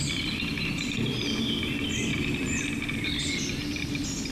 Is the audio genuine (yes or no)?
yes